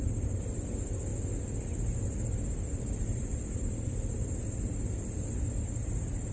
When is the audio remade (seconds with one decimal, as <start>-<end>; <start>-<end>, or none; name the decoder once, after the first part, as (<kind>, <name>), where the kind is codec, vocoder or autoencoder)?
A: 0.0-1.1 (vocoder, BigVGAN v2); 2.7-6.3